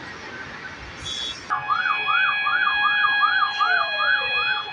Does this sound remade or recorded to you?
recorded